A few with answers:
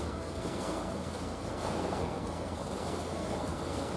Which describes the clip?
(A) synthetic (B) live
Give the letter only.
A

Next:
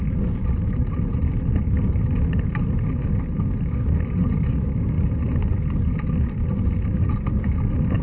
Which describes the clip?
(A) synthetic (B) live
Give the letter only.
B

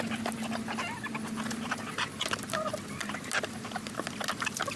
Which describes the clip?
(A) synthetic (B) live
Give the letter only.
B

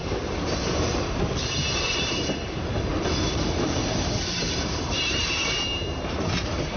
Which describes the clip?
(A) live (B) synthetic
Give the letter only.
B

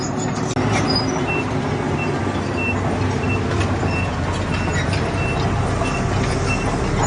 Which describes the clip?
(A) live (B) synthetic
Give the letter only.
A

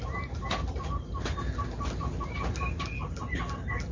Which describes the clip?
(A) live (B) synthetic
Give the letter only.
A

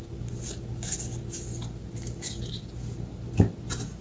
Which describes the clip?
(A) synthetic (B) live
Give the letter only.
B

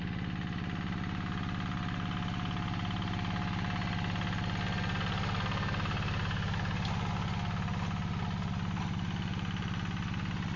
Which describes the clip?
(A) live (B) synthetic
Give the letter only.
A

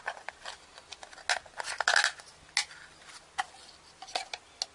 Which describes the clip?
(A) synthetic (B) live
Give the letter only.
B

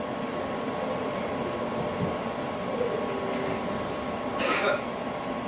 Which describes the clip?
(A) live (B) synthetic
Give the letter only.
A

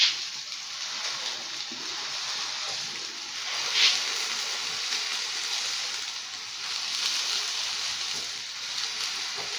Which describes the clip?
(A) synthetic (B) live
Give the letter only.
B